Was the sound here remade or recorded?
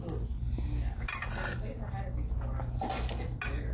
recorded